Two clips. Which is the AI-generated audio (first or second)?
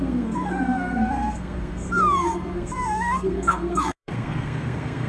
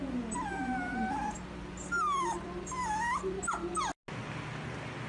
first